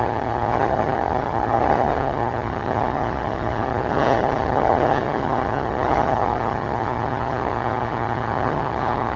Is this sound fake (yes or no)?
yes